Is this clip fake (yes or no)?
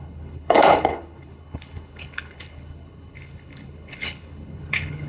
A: yes